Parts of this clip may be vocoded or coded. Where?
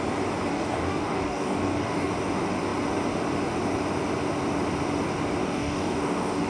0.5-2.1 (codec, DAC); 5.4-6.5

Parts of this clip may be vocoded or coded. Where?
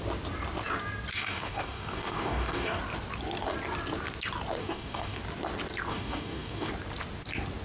1.1-2.8 (codec, DAC); 4.6-5.2; 5.9-6.7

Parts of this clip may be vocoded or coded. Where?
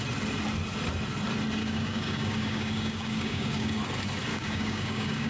1.6-3.8 (codec, DAC); 4.3-5.3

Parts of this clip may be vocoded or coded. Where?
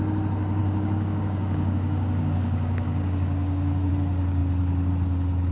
0.6-3.9 (codec, DAC)